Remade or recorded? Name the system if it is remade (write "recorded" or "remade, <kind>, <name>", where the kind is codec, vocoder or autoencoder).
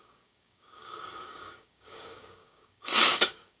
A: remade, codec, DAC